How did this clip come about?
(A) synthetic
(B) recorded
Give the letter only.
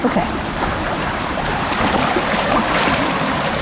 A